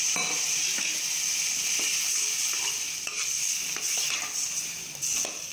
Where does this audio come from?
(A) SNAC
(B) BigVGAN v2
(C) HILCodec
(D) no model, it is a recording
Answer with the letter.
D